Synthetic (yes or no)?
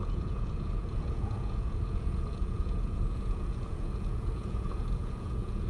yes